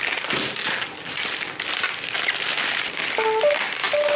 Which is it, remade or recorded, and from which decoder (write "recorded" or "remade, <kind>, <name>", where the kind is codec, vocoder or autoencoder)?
recorded